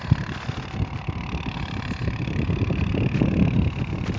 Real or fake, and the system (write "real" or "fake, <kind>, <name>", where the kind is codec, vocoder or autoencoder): real